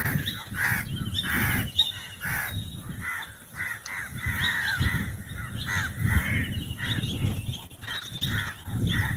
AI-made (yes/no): no